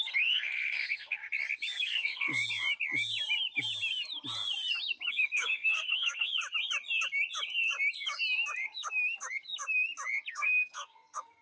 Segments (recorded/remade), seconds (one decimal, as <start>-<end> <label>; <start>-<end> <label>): 0.0-1.2 remade; 1.2-1.8 recorded; 1.8-2.3 remade; 2.3-5.1 recorded; 5.1-6.3 remade; 6.3-10.3 recorded; 10.3-11.4 remade